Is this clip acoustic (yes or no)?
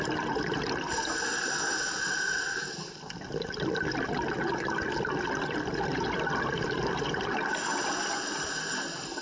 yes